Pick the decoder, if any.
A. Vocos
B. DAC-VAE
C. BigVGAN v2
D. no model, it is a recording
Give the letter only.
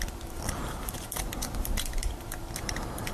D